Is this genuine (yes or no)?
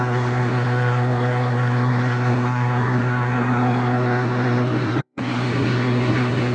no